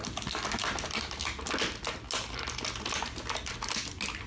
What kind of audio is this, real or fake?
real